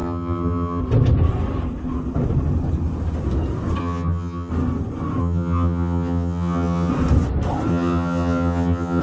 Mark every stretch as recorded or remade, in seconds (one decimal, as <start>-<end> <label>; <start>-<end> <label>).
0.0-0.8 remade; 0.8-3.8 recorded; 3.8-4.5 remade; 4.5-5.2 recorded; 5.2-6.9 remade; 6.9-7.7 recorded; 7.7-9.0 remade